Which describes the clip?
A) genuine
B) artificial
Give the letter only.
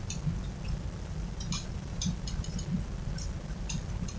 B